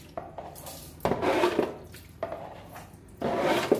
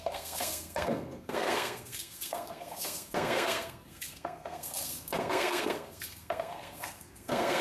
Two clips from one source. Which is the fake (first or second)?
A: second